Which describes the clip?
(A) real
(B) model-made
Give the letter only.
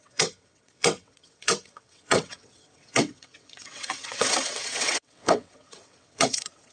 B